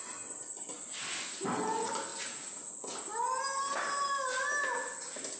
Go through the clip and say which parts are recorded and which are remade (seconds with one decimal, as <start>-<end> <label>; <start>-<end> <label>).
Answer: 0.0-5.4 recorded